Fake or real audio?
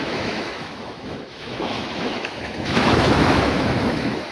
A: fake